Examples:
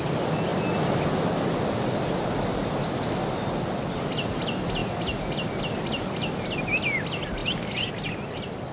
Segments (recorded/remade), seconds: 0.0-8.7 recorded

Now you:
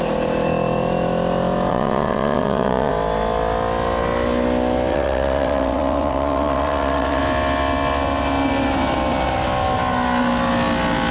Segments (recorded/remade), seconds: 0.0-1.7 recorded; 1.7-2.9 remade; 2.9-4.9 recorded; 4.9-7.2 remade; 7.2-11.1 recorded